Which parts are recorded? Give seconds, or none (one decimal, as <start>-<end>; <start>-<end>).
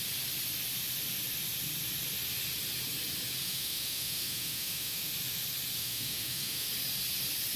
0.0-3.4; 5.1-5.8; 6.7-7.6